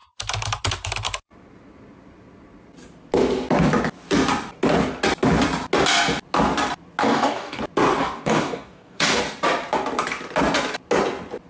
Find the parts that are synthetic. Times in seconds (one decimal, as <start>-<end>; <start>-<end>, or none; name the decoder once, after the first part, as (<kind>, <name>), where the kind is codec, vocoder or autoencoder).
7.0-7.6 (codec, DAC); 8.0-9.2